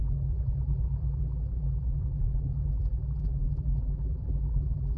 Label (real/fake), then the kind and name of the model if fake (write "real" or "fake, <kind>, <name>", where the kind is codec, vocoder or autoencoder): fake, vocoder, BigVGAN v2